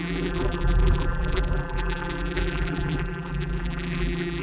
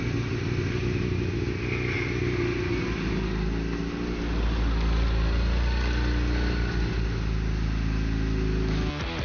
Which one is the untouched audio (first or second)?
second